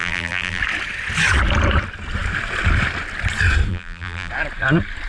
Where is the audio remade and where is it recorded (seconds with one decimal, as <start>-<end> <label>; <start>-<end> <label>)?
0.0-0.6 remade; 0.6-3.7 recorded; 3.7-4.3 remade; 4.3-5.1 recorded